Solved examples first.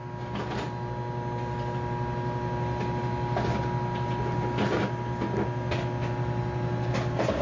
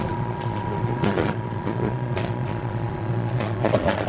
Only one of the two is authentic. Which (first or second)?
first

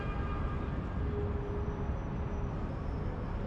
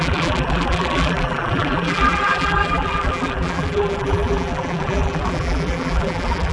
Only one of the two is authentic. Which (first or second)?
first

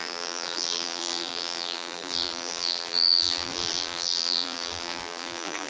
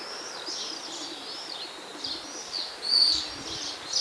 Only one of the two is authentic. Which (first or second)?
second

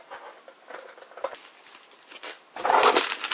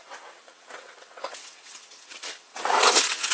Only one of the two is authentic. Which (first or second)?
first